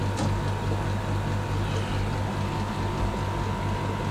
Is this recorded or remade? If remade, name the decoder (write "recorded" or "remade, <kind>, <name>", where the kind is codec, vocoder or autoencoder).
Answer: recorded